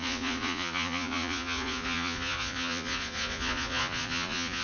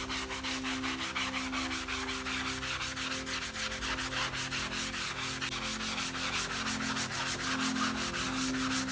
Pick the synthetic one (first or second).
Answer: first